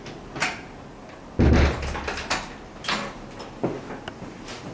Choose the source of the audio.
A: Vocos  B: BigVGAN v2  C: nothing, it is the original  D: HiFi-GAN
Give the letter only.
C